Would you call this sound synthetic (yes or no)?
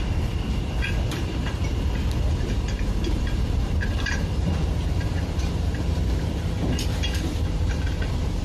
yes